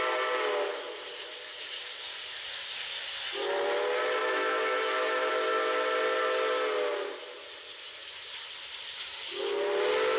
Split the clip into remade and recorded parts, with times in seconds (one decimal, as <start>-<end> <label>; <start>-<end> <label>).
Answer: 0.0-4.2 recorded; 4.2-5.3 remade; 5.3-10.2 recorded